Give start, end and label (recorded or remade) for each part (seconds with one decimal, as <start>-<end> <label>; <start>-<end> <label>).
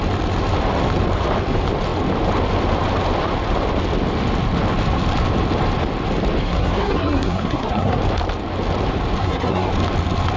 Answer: 0.0-6.4 recorded; 6.4-8.0 remade; 8.0-9.2 recorded; 9.2-9.7 remade; 9.7-10.4 recorded